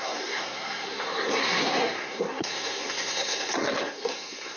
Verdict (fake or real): fake